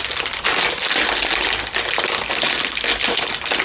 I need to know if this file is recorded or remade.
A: recorded